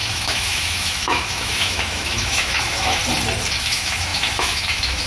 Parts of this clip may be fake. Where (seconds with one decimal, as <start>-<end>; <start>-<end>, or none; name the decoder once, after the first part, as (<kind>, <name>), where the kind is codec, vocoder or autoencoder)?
0.0-3.0 (autoencoder, DAC-VAE); 3.5-5.1